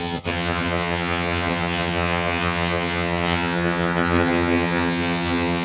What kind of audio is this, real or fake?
fake